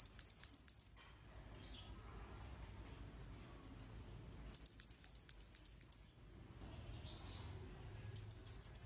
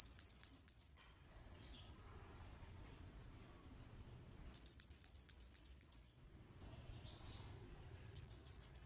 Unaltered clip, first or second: first